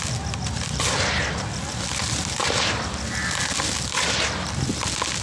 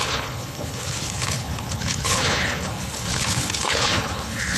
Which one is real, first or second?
first